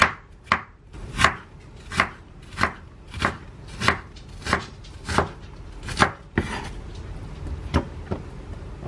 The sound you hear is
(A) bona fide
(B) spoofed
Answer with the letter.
A